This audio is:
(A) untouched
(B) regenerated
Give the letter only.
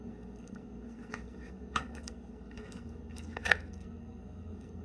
B